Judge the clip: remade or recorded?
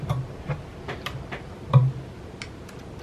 recorded